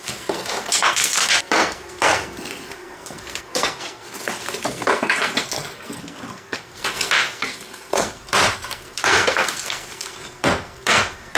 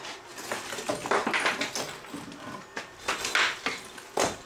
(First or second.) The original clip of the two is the second